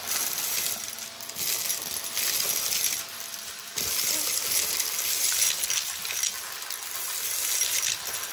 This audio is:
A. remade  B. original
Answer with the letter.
B